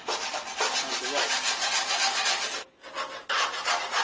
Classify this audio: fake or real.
real